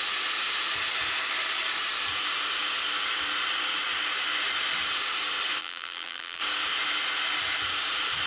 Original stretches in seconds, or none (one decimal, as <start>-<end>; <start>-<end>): 0.0-5.6; 6.4-8.3

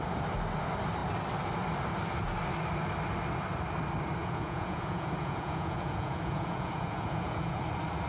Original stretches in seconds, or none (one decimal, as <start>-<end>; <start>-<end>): 0.0-4.2; 7.6-8.1